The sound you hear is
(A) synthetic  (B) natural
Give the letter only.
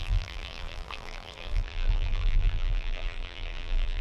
A